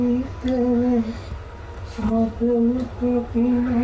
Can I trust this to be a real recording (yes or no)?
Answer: yes